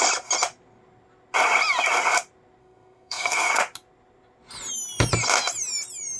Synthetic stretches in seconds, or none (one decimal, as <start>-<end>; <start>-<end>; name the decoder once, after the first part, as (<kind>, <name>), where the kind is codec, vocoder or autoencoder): 2.6-3.5 (codec, SNAC)